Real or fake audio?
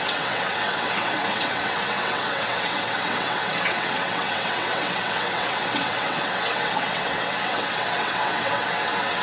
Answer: fake